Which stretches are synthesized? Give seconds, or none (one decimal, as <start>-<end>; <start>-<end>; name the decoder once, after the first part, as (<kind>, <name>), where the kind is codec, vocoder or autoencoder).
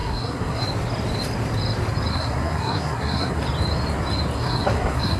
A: 0.0-0.6 (codec, SNAC); 2.1-3.4; 4.4-5.2